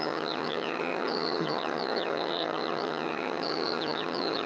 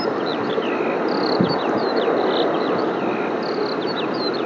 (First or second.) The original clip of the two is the second